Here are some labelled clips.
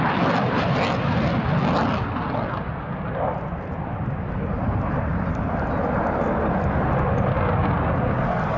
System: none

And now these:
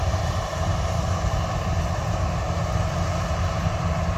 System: none